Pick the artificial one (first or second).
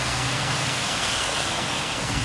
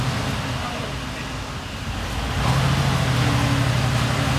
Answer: first